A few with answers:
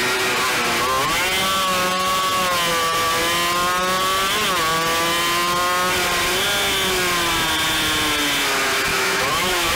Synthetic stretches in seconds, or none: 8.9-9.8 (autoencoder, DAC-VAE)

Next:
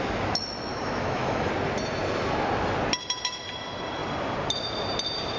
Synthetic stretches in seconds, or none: 0.7-1.5 (autoencoder, DAC-VAE)

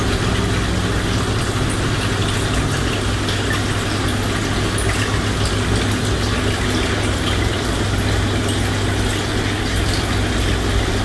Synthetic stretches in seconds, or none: none

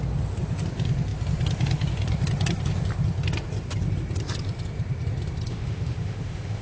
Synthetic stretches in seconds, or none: 5.5-6.6 (autoencoder, DAC-VAE)

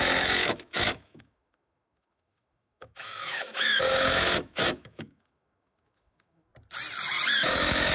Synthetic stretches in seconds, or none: 0.0-6.5 (autoencoder, DAC-VAE); 7.4-7.9

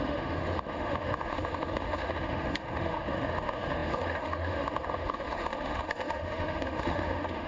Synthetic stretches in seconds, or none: 0.0-7.5 (autoencoder, DAC-VAE)